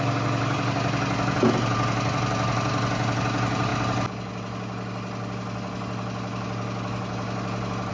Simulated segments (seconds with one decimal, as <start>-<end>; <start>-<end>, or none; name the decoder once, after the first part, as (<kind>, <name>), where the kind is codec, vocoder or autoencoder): none